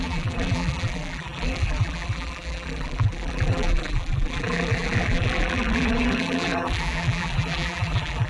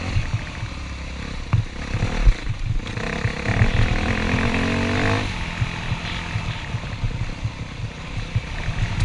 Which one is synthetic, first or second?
first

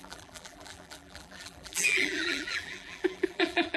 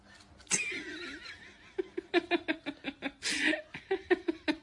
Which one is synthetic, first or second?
first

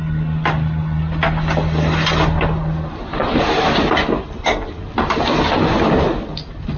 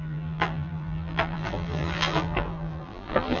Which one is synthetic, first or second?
second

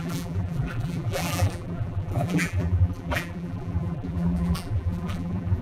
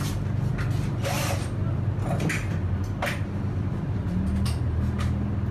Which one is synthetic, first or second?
first